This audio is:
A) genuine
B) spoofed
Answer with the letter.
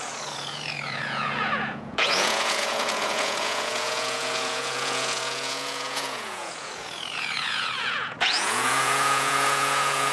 B